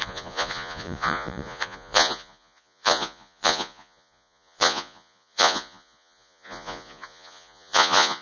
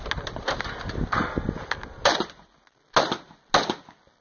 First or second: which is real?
second